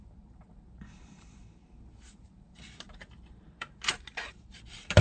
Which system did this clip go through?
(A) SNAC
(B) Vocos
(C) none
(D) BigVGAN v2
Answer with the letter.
D